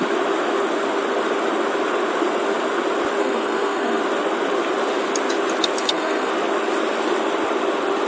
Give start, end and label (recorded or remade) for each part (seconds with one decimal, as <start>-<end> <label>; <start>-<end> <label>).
0.0-3.2 recorded; 3.2-4.0 remade; 4.0-5.8 recorded; 5.8-6.3 remade; 6.3-8.1 recorded